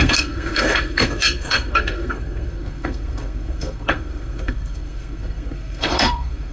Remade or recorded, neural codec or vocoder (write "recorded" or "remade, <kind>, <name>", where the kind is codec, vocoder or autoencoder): remade, codec, SNAC